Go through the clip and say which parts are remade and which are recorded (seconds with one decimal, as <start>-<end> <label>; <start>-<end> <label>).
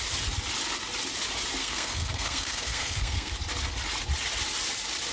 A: 0.0-1.6 recorded; 1.6-3.3 remade; 3.3-5.1 recorded